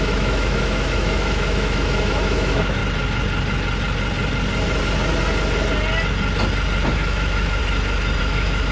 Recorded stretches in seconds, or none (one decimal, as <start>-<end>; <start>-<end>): 2.8-6.9; 7.6-8.2